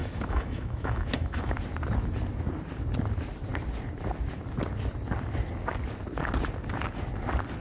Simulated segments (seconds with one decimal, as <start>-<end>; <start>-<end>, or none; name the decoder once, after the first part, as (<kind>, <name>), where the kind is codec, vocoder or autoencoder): 0.0-1.6 (autoencoder, DAC-VAE)